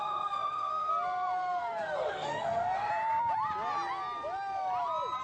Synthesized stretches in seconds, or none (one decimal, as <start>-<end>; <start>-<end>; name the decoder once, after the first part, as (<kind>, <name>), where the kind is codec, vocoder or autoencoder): 0.0-0.9 (codec, SNAC); 1.6-2.9